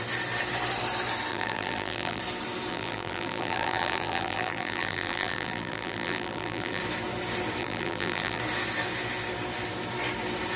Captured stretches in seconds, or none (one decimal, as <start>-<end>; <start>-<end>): 0.0-1.3; 2.2-2.7; 6.8-7.6; 8.4-10.6